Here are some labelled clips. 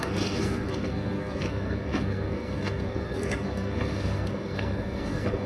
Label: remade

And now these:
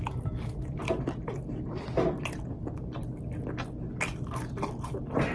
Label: recorded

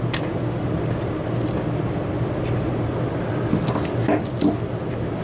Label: recorded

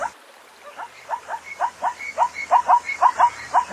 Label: recorded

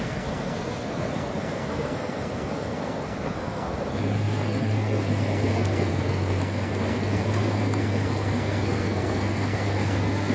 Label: remade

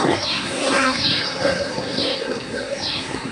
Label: remade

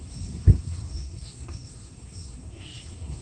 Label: remade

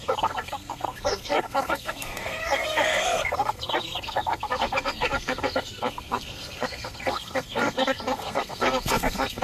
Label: remade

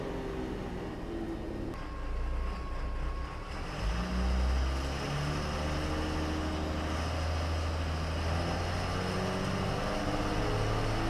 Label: recorded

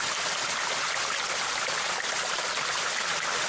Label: recorded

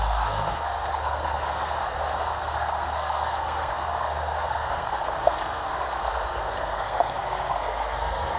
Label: remade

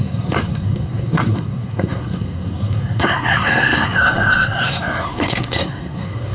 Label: remade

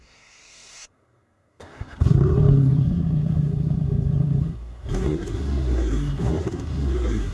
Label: remade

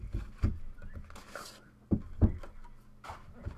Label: recorded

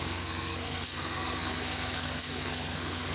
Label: remade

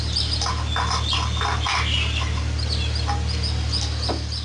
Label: recorded